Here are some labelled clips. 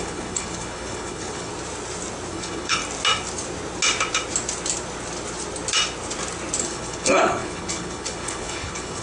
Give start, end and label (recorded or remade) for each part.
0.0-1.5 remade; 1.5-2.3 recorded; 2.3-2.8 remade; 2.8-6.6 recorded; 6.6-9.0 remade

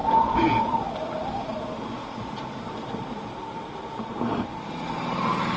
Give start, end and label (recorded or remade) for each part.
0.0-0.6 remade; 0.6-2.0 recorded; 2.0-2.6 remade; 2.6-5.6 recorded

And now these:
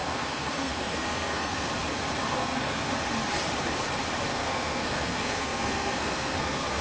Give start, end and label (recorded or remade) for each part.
0.0-1.7 remade; 1.7-2.4 recorded; 2.4-2.9 remade; 2.9-4.3 recorded; 4.3-6.8 remade